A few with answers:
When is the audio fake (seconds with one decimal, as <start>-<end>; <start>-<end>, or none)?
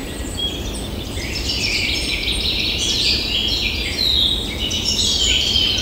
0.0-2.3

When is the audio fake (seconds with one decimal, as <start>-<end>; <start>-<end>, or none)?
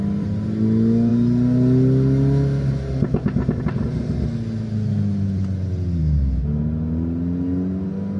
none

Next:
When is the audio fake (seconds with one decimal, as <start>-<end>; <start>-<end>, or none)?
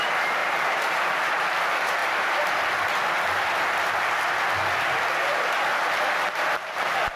0.4-1.2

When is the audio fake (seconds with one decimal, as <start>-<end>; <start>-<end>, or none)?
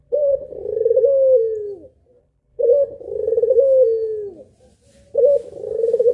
0.0-0.6; 2.2-2.7